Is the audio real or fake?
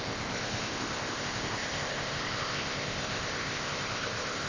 fake